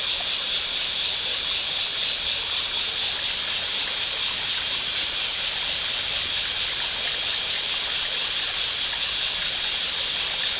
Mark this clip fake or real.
real